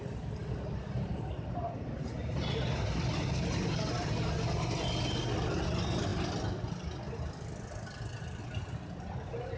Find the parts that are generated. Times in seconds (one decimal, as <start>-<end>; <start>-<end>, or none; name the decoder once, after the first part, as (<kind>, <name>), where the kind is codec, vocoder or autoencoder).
none